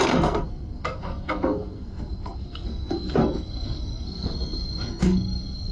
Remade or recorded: remade